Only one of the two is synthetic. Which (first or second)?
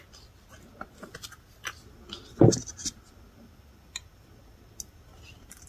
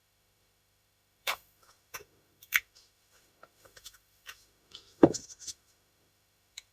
second